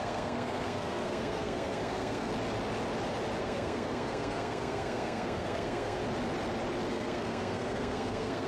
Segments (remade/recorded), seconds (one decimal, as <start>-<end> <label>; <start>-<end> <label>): 0.0-2.3 remade; 2.3-3.4 recorded; 3.4-6.0 remade; 6.0-6.9 recorded; 6.9-8.5 remade